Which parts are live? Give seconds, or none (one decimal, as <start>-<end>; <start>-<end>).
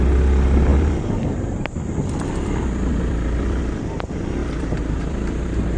0.0-0.7; 3.6-4.4